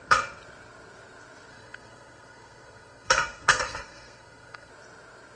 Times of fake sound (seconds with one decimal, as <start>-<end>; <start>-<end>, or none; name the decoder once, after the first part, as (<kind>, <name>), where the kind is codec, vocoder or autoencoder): 1.5-4.7 (codec, SNAC)